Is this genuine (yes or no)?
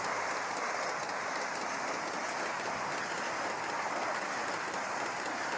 yes